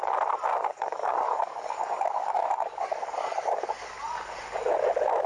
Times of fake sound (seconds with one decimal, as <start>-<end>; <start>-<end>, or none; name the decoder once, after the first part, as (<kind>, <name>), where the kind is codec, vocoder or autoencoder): 0.5-3.7 (codec, DAC)